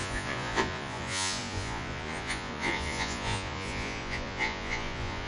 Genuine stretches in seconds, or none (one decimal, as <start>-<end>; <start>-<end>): none